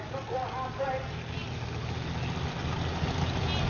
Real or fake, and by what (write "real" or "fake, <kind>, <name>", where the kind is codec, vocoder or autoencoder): real